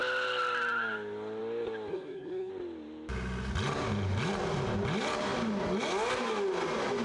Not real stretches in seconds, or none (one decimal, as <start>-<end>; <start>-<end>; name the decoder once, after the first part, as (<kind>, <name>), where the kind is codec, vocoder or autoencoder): 1.9-2.5 (codec, SNAC)